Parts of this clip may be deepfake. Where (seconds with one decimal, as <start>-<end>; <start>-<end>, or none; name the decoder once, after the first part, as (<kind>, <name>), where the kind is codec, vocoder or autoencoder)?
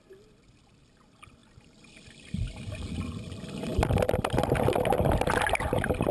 none